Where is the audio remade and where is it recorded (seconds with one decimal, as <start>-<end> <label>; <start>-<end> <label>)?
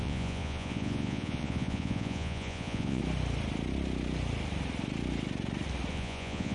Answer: 0.0-3.0 remade; 3.0-5.9 recorded; 5.9-6.5 remade